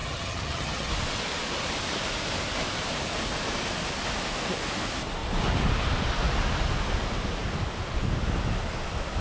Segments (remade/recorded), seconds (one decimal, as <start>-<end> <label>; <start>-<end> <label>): 0.0-0.9 remade; 0.9-9.2 recorded